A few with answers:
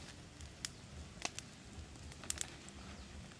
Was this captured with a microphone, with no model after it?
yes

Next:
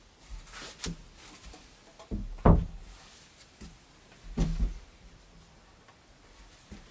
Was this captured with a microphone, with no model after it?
yes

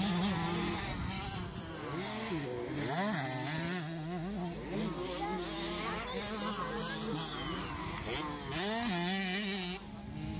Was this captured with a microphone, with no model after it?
yes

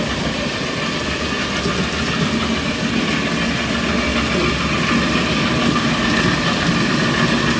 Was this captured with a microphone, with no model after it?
yes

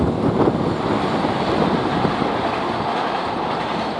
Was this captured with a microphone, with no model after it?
yes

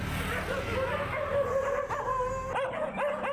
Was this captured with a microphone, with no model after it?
yes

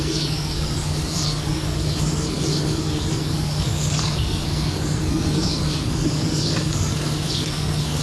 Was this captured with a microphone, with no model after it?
no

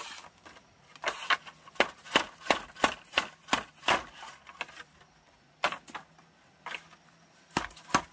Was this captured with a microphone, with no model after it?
yes